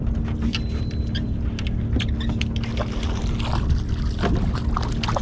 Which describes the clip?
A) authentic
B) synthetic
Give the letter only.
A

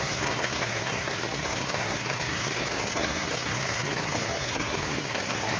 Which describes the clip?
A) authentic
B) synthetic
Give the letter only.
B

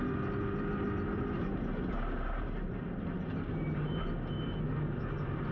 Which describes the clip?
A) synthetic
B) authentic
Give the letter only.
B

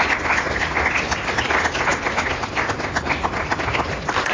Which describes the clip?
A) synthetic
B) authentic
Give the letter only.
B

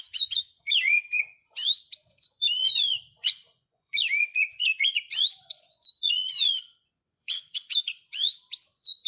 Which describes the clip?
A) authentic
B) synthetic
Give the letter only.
B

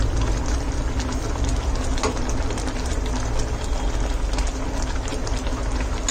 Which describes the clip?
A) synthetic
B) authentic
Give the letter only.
B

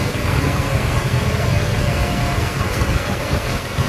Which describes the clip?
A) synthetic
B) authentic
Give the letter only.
A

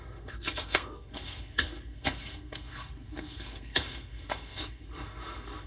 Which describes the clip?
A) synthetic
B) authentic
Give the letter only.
A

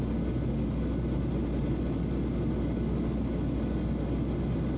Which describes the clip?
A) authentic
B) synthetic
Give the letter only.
A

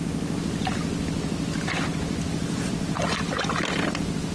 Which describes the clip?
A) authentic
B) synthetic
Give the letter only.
A